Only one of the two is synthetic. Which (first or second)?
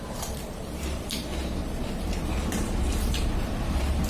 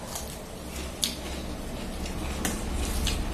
first